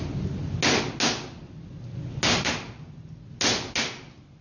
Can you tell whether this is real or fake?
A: real